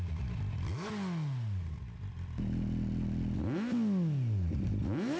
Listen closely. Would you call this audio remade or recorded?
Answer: recorded